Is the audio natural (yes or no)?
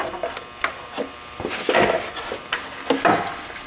yes